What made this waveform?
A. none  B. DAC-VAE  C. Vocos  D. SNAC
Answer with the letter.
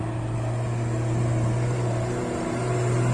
A